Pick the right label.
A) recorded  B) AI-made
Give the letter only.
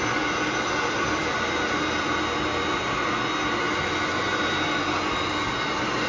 A